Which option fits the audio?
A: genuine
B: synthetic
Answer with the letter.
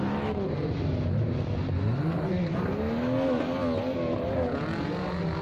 A